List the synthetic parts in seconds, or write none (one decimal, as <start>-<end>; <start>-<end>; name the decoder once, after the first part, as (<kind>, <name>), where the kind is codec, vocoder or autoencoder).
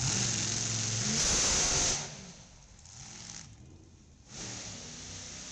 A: none